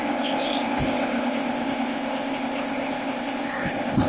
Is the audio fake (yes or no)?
yes